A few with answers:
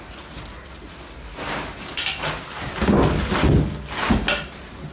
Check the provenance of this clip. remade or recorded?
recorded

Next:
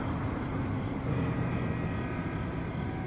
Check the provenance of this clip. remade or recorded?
recorded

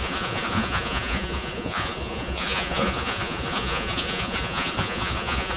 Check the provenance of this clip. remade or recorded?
remade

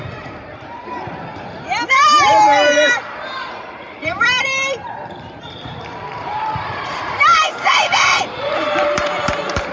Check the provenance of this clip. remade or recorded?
remade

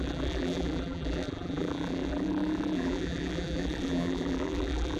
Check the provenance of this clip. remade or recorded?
remade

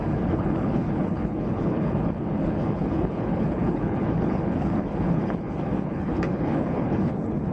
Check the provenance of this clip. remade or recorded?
remade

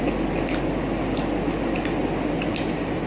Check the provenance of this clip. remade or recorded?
recorded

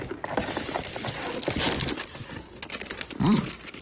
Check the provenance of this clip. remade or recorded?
remade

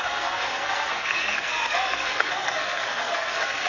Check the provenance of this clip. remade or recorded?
remade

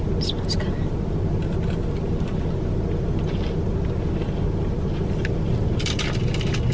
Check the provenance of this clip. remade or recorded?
recorded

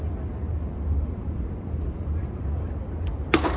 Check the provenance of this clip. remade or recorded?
remade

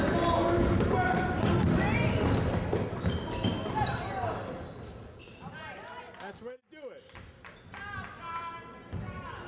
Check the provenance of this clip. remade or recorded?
recorded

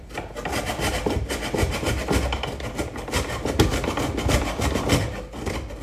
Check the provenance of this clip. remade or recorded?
recorded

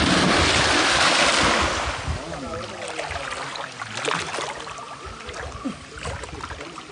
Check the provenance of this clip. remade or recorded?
recorded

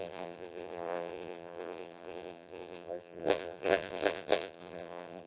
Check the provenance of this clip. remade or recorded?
remade